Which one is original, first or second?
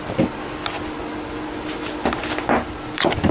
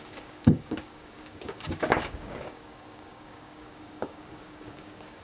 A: first